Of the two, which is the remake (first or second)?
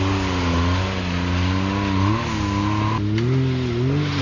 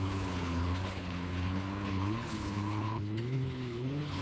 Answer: second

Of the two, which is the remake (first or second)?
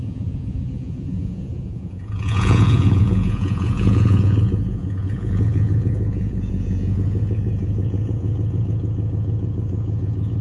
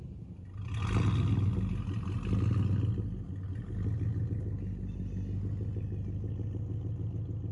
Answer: first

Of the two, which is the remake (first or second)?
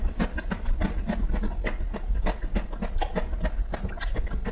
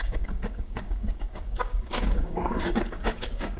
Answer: second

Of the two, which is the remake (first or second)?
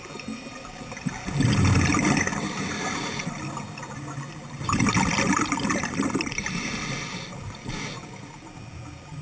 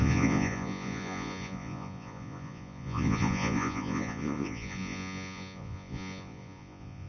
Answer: second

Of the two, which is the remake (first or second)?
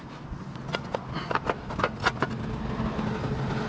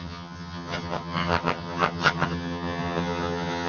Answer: second